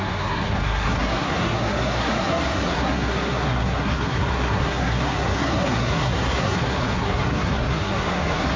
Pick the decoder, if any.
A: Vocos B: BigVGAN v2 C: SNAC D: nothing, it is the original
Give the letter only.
C